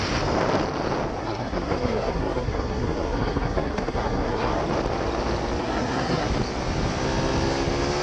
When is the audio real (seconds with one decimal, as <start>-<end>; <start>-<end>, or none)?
0.0-1.2; 4.6-5.6; 6.3-8.0